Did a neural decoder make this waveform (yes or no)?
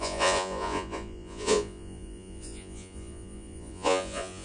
yes